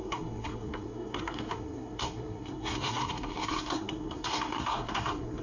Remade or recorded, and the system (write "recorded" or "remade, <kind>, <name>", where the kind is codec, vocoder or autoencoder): remade, codec, SNAC